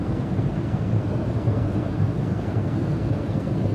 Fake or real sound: fake